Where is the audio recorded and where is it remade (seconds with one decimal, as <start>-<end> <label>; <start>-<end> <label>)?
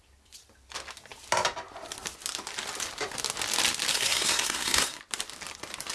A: 0.0-3.9 recorded; 3.9-5.0 remade; 5.0-5.9 recorded